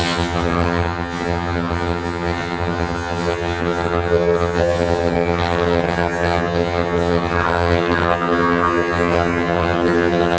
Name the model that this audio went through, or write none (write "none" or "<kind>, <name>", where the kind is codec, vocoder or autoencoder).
vocoder, HiFi-GAN